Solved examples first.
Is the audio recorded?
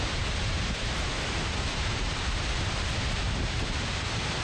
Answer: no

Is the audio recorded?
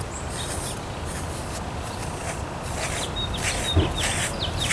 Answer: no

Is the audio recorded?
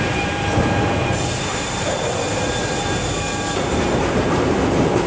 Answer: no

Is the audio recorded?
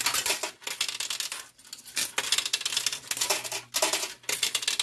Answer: yes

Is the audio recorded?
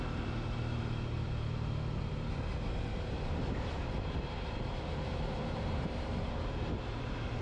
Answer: no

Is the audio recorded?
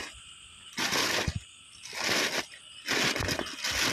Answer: yes